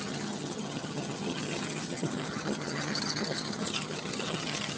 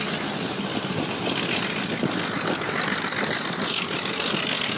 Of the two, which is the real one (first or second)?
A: second